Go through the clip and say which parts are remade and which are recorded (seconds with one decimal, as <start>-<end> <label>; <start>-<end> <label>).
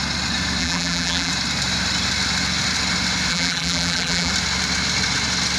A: 0.0-0.6 recorded; 0.6-1.3 remade; 1.3-3.3 recorded; 3.3-4.3 remade; 4.3-5.6 recorded